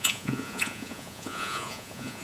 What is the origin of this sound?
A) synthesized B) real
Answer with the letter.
A